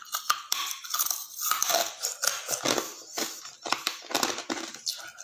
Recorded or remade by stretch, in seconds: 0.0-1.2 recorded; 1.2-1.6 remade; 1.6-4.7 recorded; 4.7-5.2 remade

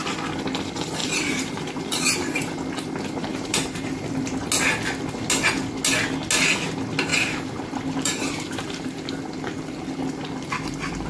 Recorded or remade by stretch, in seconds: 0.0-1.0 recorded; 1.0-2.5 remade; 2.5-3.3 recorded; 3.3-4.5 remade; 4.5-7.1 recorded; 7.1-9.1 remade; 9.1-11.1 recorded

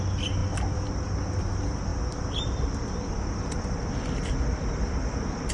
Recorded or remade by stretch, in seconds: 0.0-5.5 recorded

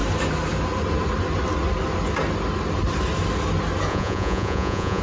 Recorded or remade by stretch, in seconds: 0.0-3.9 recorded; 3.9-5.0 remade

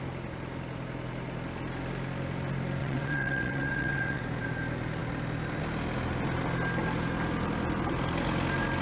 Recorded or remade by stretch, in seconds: 0.0-2.8 recorded; 2.8-4.2 remade; 4.2-8.8 recorded

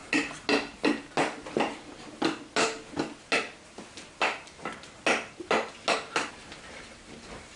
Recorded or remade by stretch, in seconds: 0.0-7.6 recorded